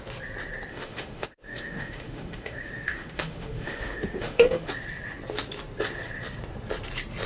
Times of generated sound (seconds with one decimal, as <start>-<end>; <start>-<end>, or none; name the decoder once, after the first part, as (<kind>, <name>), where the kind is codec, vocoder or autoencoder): 0.7-4.7 (autoencoder, DAC-VAE)